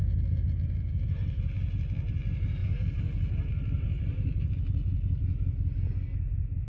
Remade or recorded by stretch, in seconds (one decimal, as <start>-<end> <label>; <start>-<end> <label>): 0.0-6.7 recorded